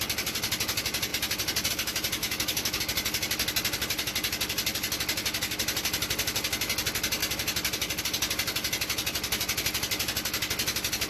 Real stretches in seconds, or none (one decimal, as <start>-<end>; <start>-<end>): 0.0-2.2; 2.8-11.1